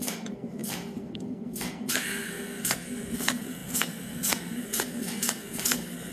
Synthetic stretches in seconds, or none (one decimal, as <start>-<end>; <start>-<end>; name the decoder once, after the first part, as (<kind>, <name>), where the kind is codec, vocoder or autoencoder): 0.0-6.1 (codec, SNAC)